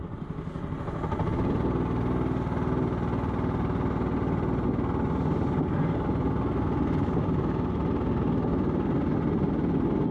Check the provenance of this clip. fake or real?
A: real